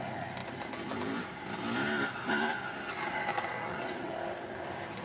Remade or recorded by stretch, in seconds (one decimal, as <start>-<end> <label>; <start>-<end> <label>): 0.0-3.3 recorded; 3.3-4.1 remade; 4.1-5.0 recorded